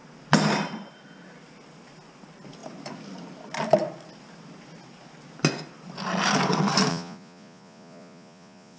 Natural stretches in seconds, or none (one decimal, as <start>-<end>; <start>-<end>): 0.0-6.9